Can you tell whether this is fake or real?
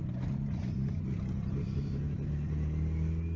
real